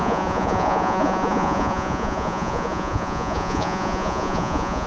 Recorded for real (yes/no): no